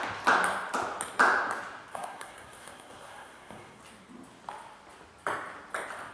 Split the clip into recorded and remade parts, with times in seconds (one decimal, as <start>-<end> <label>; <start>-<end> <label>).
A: 0.0-1.9 recorded; 1.9-3.8 remade; 3.8-6.1 recorded